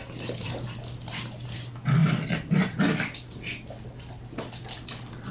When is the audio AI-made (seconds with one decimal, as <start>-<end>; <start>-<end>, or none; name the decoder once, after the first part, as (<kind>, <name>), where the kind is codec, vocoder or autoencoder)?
none